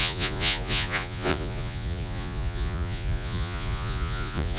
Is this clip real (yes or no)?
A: no